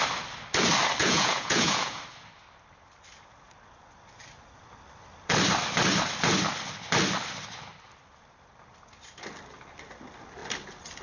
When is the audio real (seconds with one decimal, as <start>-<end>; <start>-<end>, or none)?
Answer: 0.0-1.0; 2.0-11.0